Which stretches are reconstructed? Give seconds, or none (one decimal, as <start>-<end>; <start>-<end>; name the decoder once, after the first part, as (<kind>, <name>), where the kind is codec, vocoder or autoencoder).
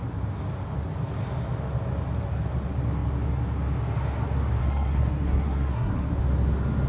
4.6-6.1 (codec, SNAC)